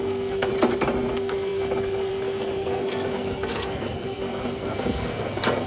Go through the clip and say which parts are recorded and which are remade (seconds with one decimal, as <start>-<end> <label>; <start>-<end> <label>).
0.0-0.5 remade; 0.5-1.1 recorded; 1.1-5.7 remade